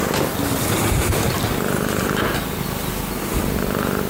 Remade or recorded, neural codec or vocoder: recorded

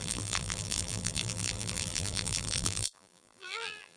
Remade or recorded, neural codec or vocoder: remade, vocoder, BigVGAN v2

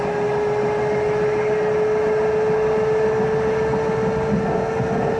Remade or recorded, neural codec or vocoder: recorded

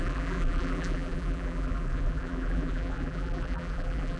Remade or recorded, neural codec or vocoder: remade, vocoder, BigVGAN v2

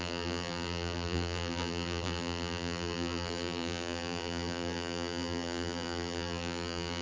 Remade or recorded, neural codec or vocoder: remade, vocoder, BigVGAN v2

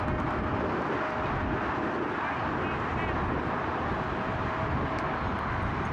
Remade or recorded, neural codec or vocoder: recorded